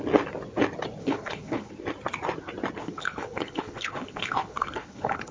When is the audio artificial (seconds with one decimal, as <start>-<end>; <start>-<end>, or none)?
1.0-1.7; 2.8-5.3